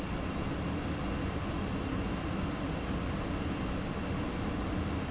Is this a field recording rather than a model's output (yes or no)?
yes